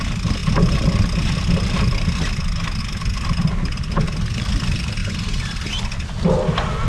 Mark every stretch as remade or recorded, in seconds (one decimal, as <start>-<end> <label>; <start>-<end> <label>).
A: 0.0-6.9 recorded